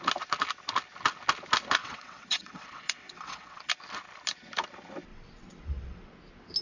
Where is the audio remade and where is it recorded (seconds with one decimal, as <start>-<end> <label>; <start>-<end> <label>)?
0.0-1.8 recorded; 1.8-3.7 remade; 3.7-5.1 recorded; 5.1-6.1 remade; 6.1-6.6 recorded